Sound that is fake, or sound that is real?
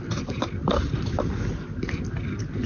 real